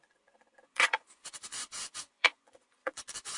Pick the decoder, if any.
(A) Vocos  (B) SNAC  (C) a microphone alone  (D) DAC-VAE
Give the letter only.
A